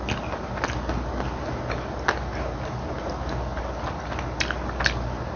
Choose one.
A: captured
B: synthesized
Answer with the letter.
A